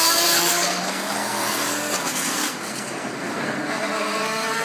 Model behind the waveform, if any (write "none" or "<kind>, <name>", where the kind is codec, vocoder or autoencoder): codec, SNAC